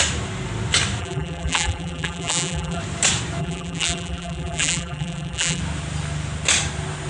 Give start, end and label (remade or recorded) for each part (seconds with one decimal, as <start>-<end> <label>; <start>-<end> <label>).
0.0-1.0 recorded; 1.0-2.8 remade; 2.8-3.4 recorded; 3.4-5.6 remade; 5.6-7.1 recorded